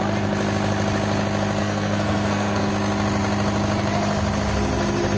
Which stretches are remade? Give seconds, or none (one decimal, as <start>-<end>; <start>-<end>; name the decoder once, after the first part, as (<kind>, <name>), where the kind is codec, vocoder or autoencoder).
1.6-2.7 (codec, SNAC)